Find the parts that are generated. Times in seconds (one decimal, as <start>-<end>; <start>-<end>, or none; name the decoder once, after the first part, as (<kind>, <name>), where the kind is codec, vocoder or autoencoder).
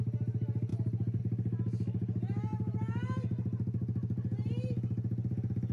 none